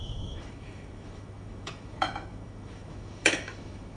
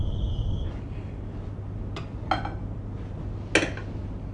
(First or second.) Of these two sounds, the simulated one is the first